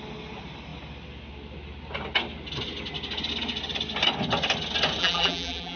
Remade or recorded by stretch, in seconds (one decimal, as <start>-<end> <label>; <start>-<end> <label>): 0.0-5.0 recorded; 5.0-5.8 remade